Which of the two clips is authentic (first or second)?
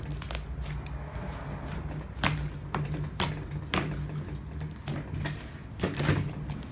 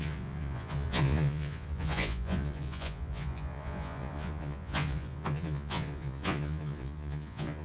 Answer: first